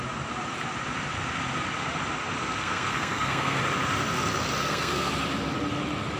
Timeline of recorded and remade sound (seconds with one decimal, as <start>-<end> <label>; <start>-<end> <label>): 0.0-2.4 recorded; 2.4-3.6 remade; 3.6-4.6 recorded; 4.6-5.1 remade; 5.1-6.2 recorded